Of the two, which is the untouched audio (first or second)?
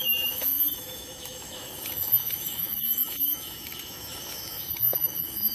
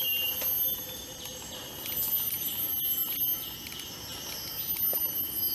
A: second